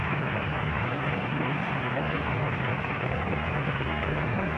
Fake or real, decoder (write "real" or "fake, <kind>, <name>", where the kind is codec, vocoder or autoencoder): fake, codec, SNAC